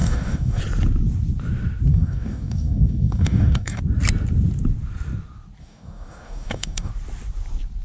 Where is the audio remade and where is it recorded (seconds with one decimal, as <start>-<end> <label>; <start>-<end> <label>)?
0.0-0.6 remade; 0.6-1.9 recorded; 1.9-3.8 remade; 3.8-5.6 recorded; 5.6-6.9 remade; 6.9-7.8 recorded